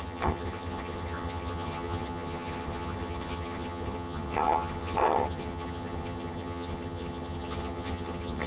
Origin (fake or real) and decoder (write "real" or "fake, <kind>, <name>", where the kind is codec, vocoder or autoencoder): fake, vocoder, HiFi-GAN